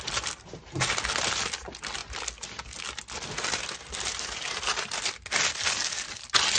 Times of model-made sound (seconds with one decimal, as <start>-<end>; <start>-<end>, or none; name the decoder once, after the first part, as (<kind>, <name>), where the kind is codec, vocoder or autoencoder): none

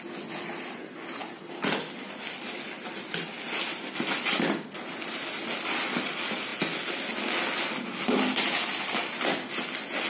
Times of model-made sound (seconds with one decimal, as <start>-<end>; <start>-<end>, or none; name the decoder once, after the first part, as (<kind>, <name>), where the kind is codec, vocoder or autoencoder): none

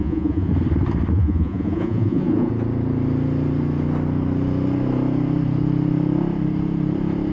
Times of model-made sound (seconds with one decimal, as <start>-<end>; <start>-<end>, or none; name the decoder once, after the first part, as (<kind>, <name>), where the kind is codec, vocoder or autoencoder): 0.0-0.5 (vocoder, Vocos); 1.1-2.5

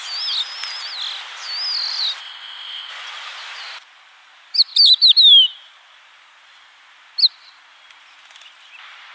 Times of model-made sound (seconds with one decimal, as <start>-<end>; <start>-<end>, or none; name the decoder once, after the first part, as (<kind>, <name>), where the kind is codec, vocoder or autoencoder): 2.2-2.9 (codec, ZipCodec)